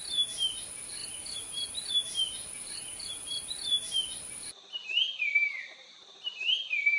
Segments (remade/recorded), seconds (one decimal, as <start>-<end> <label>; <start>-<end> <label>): 0.0-1.0 recorded; 1.0-1.9 remade; 1.9-2.4 recorded; 2.4-3.5 remade; 3.5-5.4 recorded; 5.4-6.5 remade; 6.5-7.0 recorded